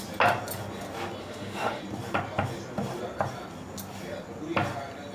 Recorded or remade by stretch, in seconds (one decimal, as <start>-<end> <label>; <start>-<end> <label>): 0.0-1.2 recorded; 1.2-1.8 remade; 1.8-5.1 recorded